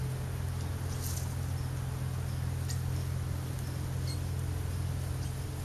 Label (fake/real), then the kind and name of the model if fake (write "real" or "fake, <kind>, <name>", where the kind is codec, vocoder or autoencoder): real